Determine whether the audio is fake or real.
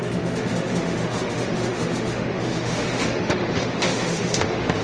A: fake